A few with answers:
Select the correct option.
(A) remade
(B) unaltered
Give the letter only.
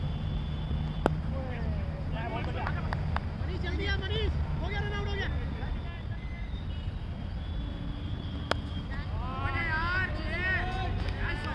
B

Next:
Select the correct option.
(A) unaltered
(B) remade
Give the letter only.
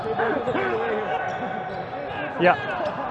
A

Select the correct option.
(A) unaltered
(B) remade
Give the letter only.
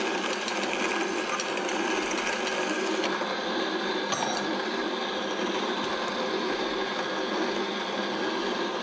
A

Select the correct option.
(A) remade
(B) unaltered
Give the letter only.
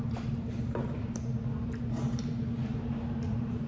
A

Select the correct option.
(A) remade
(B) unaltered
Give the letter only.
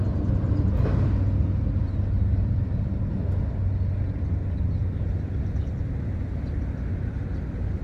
B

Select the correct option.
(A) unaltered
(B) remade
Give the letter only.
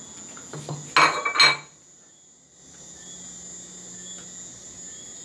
A